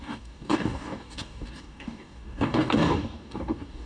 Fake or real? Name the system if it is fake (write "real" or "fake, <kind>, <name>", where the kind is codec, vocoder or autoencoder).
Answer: fake, codec, DAC